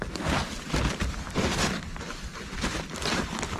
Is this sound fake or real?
real